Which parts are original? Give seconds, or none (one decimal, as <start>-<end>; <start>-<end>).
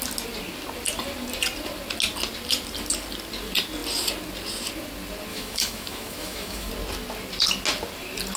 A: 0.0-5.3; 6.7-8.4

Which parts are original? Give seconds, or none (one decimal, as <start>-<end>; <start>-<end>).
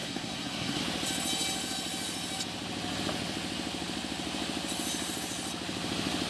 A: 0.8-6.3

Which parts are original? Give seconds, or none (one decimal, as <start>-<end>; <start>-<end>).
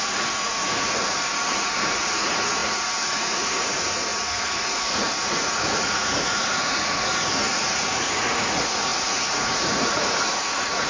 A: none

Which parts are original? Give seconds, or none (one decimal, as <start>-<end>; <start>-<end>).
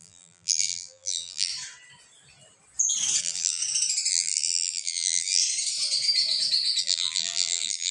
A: 1.5-3.2; 3.6-4.1; 5.4-6.8